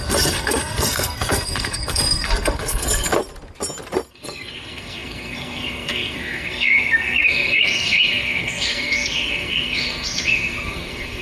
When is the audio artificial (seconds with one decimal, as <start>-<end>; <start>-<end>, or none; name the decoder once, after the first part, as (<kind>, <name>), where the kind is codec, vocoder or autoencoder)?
0.0-3.1 (codec, SNAC); 4.1-11.2